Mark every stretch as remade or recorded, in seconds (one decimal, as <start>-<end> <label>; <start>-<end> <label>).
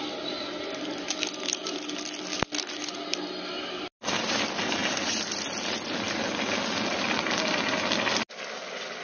0.0-9.0 recorded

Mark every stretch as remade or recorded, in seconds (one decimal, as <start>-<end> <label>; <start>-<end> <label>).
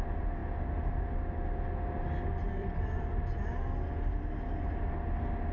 0.0-2.6 recorded; 2.6-3.2 remade; 3.2-5.5 recorded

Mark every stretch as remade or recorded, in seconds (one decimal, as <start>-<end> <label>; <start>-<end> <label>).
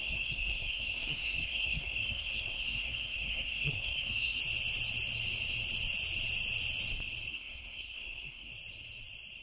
0.0-4.4 remade; 4.4-7.3 recorded; 7.3-8.5 remade; 8.5-9.4 recorded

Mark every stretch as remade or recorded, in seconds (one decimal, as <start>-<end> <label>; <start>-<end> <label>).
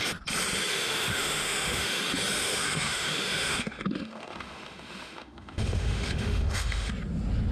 0.0-0.7 recorded; 0.7-2.0 remade; 2.0-2.4 recorded; 2.4-6.9 remade; 6.9-7.5 recorded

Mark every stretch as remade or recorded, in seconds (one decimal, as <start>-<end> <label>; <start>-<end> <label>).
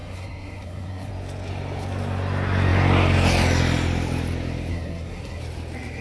0.0-1.1 remade; 1.1-4.7 recorded; 4.7-5.4 remade; 5.4-6.0 recorded